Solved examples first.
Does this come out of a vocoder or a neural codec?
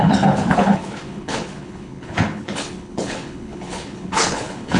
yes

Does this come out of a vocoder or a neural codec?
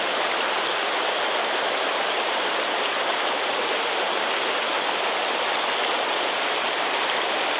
no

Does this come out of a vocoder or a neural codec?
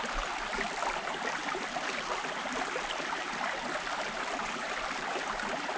no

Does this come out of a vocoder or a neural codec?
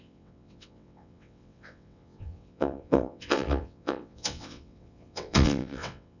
yes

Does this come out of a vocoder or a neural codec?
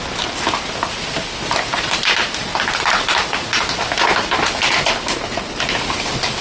no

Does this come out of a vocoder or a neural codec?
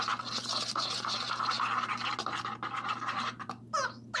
no